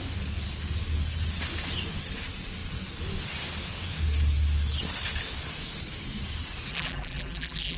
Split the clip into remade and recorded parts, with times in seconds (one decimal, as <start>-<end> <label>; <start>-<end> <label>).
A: 0.0-6.7 recorded; 6.7-7.8 remade